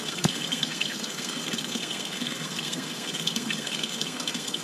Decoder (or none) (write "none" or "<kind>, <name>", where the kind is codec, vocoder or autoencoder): codec, SNAC